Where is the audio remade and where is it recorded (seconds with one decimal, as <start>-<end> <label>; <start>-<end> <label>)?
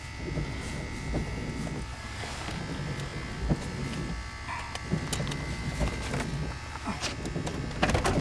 0.0-1.9 recorded; 1.9-2.6 remade; 2.6-8.2 recorded